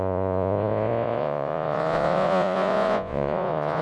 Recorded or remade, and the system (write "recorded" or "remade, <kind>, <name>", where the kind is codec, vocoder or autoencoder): remade, vocoder, Vocos